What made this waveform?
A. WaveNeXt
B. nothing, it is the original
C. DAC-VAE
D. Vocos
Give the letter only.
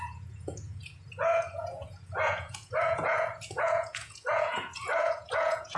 D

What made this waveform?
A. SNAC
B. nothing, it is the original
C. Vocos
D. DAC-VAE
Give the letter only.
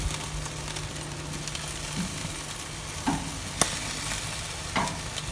B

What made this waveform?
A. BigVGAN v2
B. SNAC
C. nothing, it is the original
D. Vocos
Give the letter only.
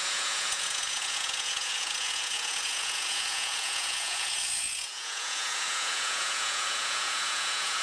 D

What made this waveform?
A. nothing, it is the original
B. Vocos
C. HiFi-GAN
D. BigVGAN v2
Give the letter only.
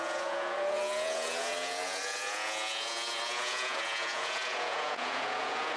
B